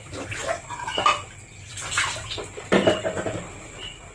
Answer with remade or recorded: recorded